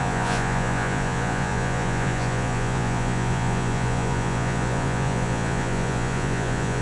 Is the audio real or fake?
fake